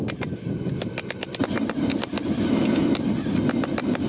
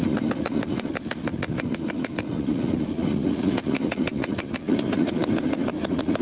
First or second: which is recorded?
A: first